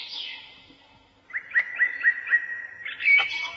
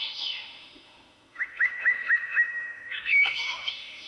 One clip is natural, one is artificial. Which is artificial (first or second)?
second